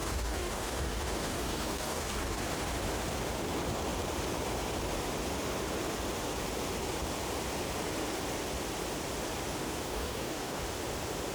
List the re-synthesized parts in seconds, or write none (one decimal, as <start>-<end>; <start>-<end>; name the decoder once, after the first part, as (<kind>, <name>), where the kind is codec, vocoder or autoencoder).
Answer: 0.0-2.4 (codec, DAC); 9.6-10.6

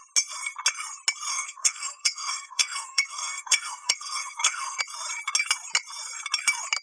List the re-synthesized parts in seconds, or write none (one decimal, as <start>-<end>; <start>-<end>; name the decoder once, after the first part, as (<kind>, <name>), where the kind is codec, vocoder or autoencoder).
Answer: 1.3-4.8 (codec, SNAC)

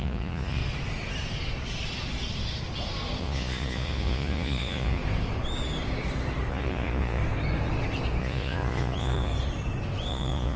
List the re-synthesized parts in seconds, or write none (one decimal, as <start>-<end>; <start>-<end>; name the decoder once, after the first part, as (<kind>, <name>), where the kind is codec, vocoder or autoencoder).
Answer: 0.0-0.6 (vocoder, Vocos); 3.2-5.0; 6.5-7.2; 8.2-9.3; 10.1-10.6

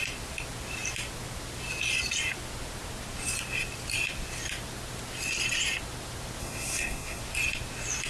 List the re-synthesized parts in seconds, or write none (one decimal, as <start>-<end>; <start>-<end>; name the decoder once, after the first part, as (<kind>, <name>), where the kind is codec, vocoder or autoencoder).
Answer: 6.4-7.2 (codec, SNAC)

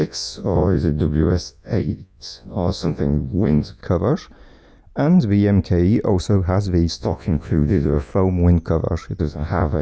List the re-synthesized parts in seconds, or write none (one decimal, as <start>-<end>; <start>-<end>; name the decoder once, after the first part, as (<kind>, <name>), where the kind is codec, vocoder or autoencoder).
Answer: 0.0-3.8 (vocoder, Vocos); 6.9-8.1; 9.2-9.8

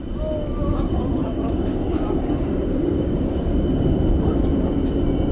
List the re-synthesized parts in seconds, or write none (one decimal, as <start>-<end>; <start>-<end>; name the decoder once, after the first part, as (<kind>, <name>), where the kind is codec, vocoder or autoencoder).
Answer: 0.6-3.8 (codec, DAC)

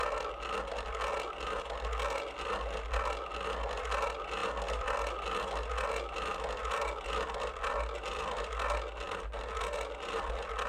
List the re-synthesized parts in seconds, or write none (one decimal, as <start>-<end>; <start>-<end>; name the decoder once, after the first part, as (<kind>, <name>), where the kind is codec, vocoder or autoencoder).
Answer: none

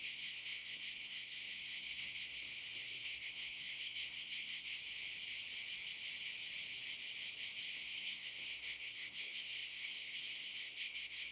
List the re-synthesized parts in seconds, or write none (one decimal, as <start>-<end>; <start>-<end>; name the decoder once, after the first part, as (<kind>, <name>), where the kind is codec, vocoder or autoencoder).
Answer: 0.0-4.8 (codec, SNAC); 7.6-11.3